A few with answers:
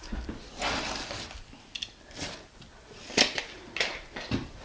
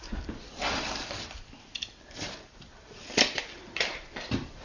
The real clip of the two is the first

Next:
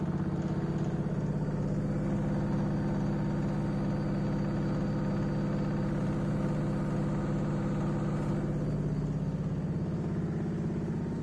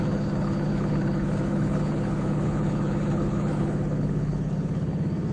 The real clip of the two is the first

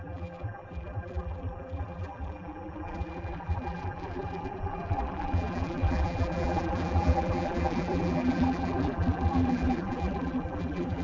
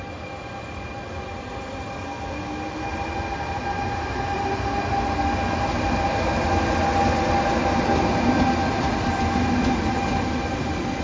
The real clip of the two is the second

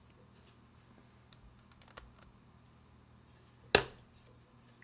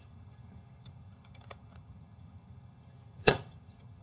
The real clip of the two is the first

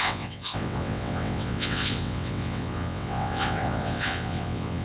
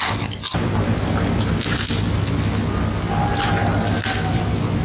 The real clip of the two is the second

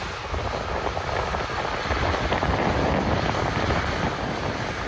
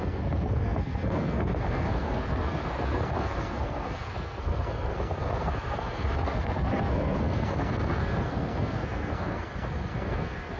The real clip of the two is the first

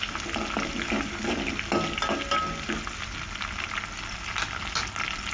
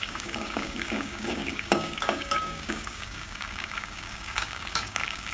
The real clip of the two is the first